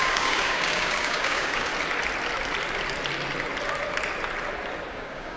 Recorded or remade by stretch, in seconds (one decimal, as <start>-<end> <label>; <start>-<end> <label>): 0.0-1.7 remade; 1.7-4.9 recorded; 4.9-5.4 remade